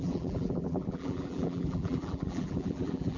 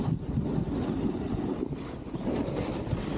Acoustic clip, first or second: second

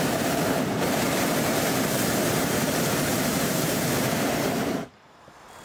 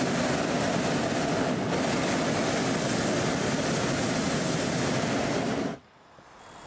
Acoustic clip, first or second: second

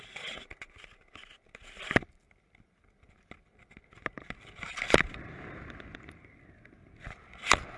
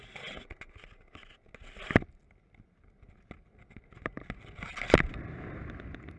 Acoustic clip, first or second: second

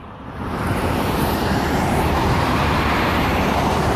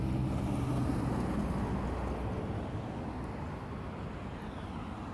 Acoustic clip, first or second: second